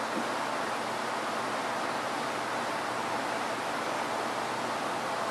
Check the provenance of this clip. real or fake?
real